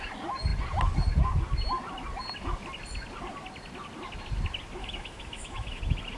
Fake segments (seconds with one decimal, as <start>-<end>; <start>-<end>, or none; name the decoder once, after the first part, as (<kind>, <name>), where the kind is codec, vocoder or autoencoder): 4.8-5.8 (autoencoder, DAC-VAE)